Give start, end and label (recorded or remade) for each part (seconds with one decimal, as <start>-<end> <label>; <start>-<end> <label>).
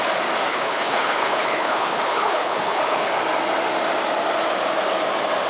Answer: 0.0-0.5 recorded; 0.5-3.1 remade; 3.1-5.5 recorded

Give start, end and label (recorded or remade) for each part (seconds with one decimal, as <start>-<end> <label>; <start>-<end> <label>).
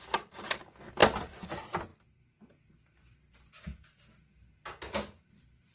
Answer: 0.0-5.7 recorded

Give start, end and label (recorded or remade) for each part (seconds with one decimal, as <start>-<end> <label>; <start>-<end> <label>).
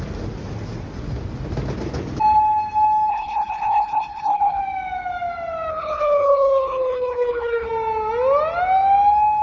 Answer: 0.0-3.1 recorded; 3.1-4.6 remade; 4.6-5.7 recorded; 5.7-7.7 remade; 7.7-9.4 recorded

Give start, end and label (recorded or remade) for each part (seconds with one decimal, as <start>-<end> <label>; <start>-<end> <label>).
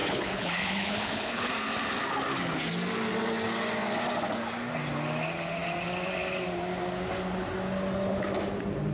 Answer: 0.0-1.5 remade; 1.5-8.9 recorded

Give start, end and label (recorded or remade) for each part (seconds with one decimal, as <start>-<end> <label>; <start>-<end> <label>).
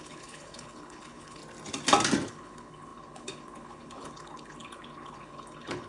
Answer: 0.0-1.4 remade; 1.4-2.3 recorded; 2.3-5.9 remade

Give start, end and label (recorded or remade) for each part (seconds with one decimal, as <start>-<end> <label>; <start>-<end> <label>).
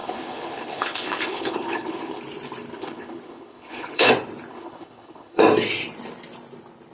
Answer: 0.0-2.2 remade; 2.2-2.7 recorded; 2.7-4.1 remade; 4.1-4.5 recorded; 4.5-5.4 remade; 5.4-6.9 recorded